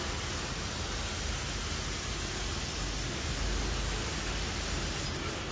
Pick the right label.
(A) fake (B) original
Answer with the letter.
B